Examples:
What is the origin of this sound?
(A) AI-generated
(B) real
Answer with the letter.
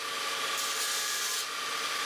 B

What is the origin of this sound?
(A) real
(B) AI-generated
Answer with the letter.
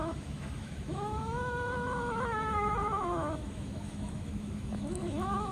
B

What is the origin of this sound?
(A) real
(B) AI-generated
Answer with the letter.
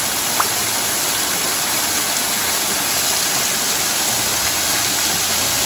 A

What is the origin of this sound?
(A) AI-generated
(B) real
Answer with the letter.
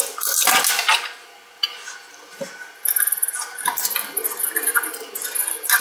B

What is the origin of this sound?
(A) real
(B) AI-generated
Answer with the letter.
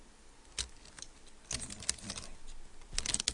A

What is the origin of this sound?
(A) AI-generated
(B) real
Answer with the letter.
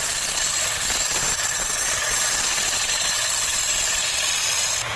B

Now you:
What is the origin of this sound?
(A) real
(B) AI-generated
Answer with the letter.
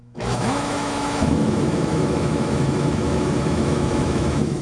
B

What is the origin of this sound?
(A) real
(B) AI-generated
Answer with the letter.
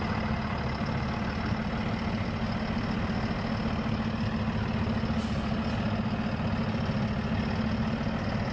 A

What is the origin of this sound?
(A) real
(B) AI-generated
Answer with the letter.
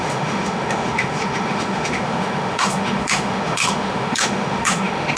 B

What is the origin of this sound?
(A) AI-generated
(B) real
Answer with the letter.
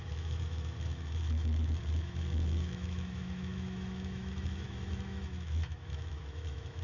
A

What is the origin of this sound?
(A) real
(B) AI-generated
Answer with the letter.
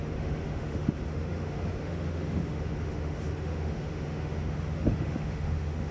B